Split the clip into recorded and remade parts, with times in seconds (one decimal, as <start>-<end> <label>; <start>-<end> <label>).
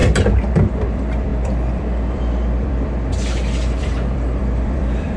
0.0-0.5 recorded; 0.5-5.2 remade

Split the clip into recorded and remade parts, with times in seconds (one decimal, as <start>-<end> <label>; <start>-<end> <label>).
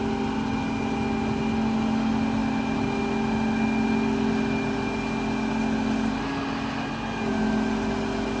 0.0-8.4 recorded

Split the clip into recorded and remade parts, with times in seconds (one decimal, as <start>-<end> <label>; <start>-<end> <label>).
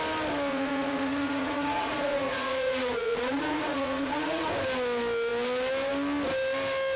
0.0-0.5 recorded; 0.5-4.5 remade; 4.5-7.0 recorded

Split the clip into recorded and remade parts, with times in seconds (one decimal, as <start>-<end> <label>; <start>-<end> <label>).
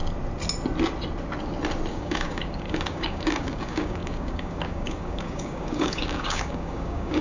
0.0-1.9 recorded; 1.9-7.2 remade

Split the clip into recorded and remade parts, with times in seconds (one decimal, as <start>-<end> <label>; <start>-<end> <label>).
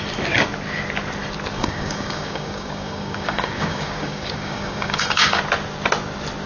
0.0-1.5 recorded; 1.5-5.4 remade; 5.4-6.5 recorded